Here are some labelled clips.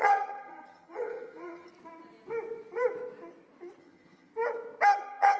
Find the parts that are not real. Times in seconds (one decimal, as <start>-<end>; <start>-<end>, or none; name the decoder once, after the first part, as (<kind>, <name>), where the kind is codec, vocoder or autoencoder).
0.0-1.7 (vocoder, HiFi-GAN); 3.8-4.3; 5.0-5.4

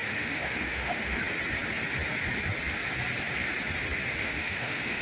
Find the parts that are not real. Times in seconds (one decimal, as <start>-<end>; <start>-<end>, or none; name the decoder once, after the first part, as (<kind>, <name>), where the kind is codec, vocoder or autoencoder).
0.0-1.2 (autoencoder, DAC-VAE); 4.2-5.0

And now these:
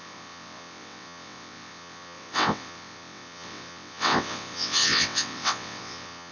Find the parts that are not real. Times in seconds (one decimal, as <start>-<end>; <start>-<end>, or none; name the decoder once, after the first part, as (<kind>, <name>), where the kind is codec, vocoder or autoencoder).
0.0-6.3 (vocoder, WaveNeXt)

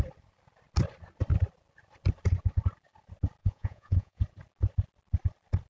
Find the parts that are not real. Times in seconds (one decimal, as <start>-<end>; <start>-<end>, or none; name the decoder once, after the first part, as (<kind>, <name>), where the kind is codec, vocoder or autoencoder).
3.4-4.2 (vocoder, Vocos)